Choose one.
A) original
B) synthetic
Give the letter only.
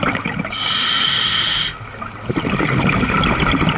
A